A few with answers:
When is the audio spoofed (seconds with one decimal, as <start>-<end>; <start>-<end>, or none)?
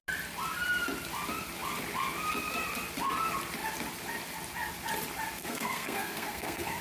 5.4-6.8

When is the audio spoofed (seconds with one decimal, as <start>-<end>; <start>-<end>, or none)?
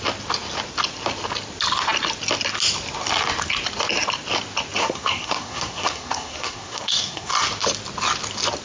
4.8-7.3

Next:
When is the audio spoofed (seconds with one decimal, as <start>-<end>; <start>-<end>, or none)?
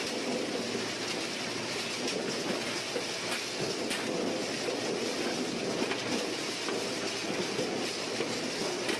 none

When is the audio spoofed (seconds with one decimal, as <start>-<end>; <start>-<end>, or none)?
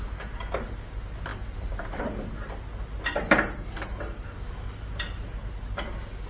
none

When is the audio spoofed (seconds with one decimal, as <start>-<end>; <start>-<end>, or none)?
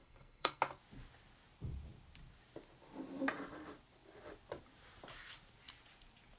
0.0-0.6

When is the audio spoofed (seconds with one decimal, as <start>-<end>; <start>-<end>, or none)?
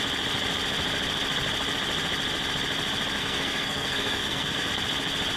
3.2-4.7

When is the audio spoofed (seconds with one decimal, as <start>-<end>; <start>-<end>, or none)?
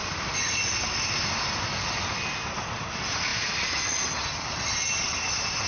none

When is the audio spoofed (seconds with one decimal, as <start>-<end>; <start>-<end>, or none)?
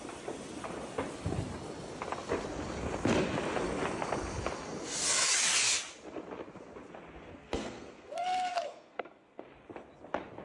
7.3-9.4